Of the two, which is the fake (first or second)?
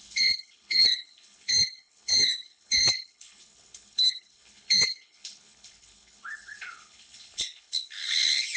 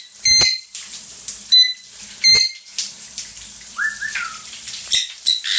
first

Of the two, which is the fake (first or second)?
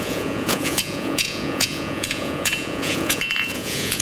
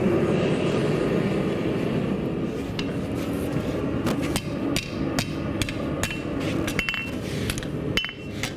first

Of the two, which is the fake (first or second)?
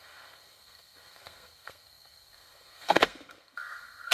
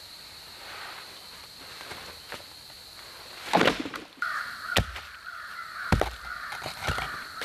first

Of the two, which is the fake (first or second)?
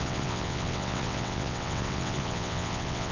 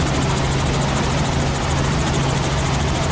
first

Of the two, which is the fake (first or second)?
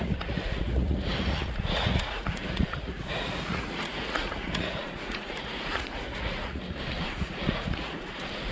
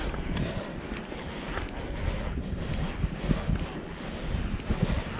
first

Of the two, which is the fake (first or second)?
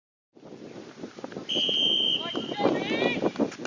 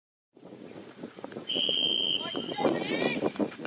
second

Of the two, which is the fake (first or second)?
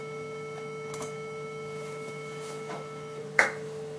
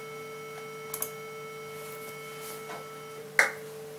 first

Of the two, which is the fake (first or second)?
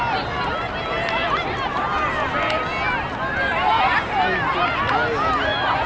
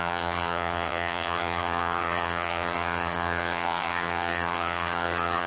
second